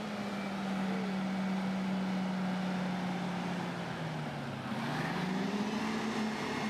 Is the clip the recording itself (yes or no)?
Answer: yes